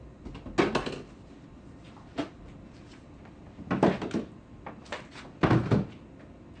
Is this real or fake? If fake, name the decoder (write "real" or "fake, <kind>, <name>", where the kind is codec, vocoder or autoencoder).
real